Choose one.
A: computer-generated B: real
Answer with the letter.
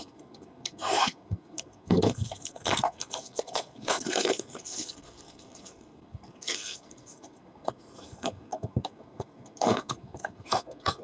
A